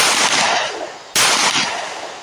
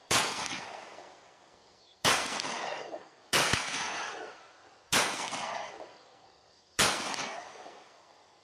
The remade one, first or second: second